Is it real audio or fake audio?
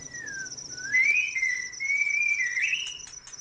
real